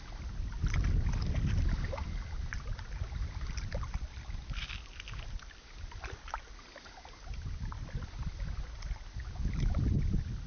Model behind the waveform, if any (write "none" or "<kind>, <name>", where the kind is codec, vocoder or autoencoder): none